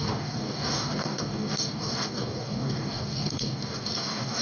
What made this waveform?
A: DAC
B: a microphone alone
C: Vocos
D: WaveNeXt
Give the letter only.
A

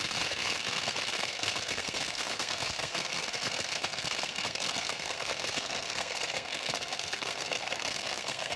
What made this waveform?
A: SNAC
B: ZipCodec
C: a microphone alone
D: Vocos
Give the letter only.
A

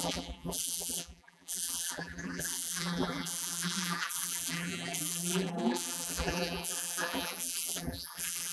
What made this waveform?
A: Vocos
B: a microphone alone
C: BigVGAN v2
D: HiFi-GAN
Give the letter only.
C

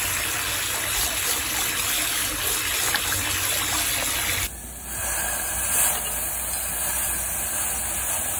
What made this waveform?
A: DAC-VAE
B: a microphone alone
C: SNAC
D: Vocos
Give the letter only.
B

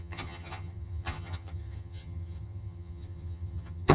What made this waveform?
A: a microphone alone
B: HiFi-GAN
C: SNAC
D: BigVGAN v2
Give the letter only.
B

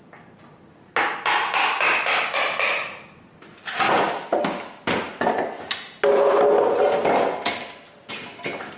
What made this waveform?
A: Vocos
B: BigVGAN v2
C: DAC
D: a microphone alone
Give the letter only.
D